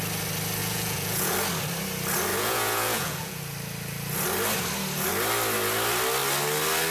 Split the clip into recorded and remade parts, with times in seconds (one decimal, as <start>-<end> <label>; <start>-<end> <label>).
0.0-0.6 recorded; 0.6-1.3 remade; 1.3-2.3 recorded; 2.3-3.4 remade; 3.4-6.9 recorded